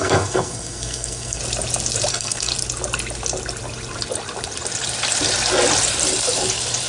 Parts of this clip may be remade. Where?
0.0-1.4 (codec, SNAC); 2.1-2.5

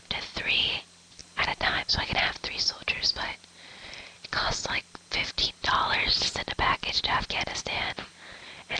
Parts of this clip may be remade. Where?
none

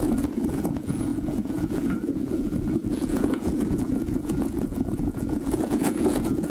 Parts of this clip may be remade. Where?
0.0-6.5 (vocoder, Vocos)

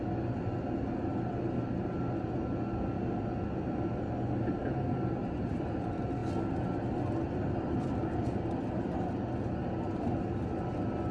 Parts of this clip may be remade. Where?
none

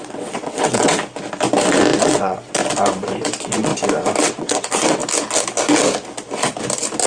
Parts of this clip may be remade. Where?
0.0-1.0 (vocoder, WaveNeXt); 2.0-2.6; 3.2-3.7; 4.2-5.0